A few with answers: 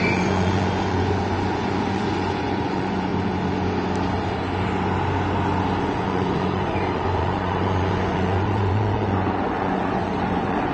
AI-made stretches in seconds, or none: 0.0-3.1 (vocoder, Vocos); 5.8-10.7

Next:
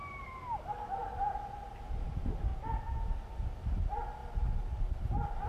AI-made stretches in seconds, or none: 2.5-3.0 (vocoder, Vocos)

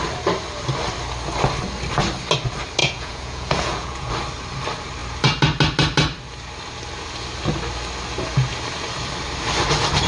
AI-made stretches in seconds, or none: 2.8-4.1 (vocoder, Vocos)

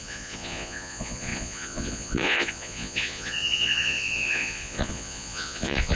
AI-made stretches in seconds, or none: 0.0-6.0 (vocoder, Vocos)